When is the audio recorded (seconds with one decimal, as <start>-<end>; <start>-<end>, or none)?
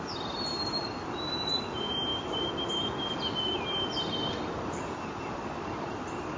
0.0-6.4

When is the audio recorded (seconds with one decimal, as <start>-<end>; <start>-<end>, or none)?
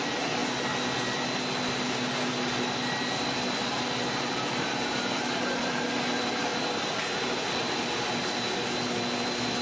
0.0-9.6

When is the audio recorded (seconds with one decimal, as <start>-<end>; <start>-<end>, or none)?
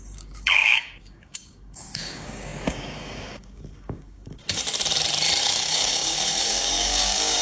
4.6-5.4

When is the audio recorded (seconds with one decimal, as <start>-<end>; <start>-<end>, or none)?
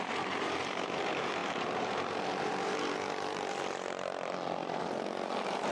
none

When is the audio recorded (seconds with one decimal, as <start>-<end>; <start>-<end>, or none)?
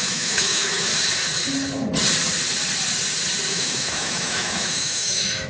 0.9-3.5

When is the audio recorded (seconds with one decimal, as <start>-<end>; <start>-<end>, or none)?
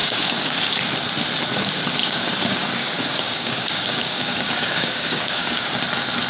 0.8-2.0; 5.8-6.3